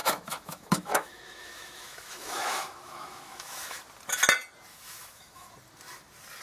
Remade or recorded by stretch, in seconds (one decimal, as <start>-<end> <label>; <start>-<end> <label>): 0.0-3.8 remade; 3.8-4.7 recorded; 4.7-5.5 remade; 5.5-6.4 recorded